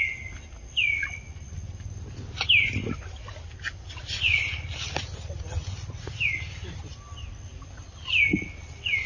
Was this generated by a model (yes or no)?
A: no